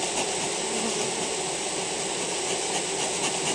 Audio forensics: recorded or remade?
recorded